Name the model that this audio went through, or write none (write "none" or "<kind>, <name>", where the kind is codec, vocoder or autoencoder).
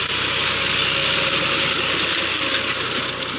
none